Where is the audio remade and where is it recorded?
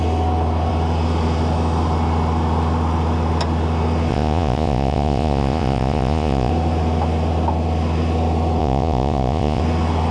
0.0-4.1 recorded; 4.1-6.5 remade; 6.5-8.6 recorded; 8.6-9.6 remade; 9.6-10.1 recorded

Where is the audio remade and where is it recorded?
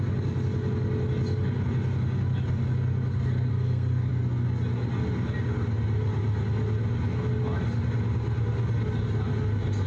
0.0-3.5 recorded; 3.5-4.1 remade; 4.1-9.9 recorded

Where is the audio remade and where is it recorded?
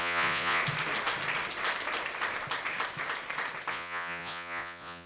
0.0-0.6 remade; 0.6-3.7 recorded; 3.7-5.1 remade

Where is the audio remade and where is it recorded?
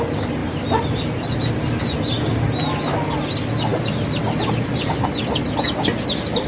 0.0-6.5 recorded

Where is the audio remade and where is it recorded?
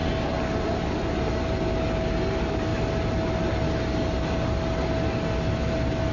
0.0-6.1 recorded